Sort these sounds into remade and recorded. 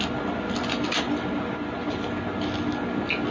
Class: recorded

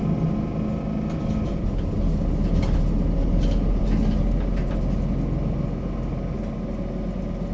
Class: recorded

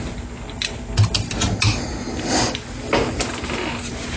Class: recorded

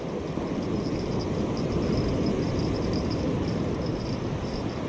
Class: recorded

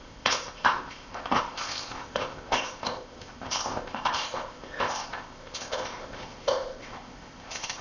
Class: remade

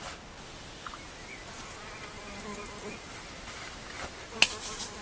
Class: recorded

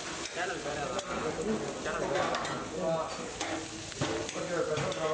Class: recorded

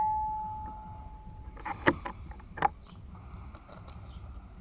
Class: recorded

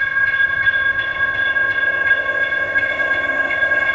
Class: remade